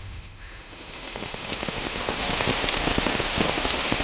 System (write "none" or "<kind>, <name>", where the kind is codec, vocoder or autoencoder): autoencoder, DAC-VAE